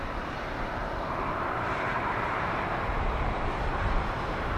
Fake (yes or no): yes